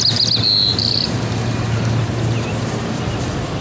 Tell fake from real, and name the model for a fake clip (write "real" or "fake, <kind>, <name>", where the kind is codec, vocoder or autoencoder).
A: real